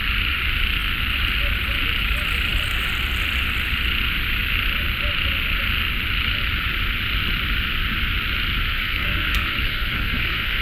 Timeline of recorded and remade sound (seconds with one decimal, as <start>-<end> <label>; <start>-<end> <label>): 0.0-8.7 recorded; 8.7-10.6 remade